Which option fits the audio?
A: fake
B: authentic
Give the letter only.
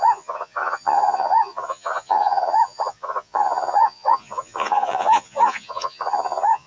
A